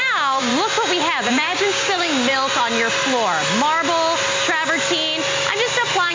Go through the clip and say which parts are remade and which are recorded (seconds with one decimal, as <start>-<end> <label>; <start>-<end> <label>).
0.0-0.5 remade; 0.5-1.3 recorded; 1.3-2.3 remade; 2.3-6.1 recorded

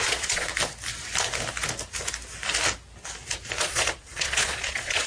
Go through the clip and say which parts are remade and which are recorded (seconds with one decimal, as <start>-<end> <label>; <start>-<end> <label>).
0.0-0.5 remade; 0.5-3.6 recorded; 3.6-5.1 remade

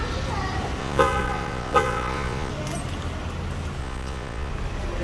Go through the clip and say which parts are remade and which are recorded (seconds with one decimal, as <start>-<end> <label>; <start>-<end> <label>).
0.0-0.8 recorded; 0.8-2.5 remade; 2.5-3.8 recorded; 3.8-4.5 remade; 4.5-5.0 recorded

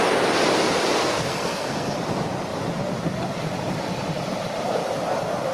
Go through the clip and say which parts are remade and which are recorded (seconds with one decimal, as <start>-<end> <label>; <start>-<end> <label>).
0.0-1.0 recorded; 1.0-2.0 remade; 2.0-5.5 recorded